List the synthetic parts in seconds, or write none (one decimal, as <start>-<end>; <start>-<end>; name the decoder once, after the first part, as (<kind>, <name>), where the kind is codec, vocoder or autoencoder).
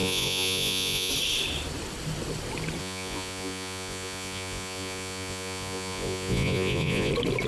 0.0-1.1 (vocoder, Vocos); 2.8-7.1